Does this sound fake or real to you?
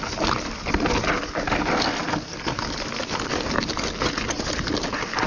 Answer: real